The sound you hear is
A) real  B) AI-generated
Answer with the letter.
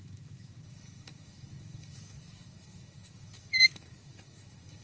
B